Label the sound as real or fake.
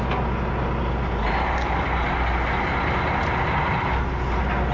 real